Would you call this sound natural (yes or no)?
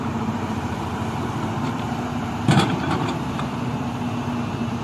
no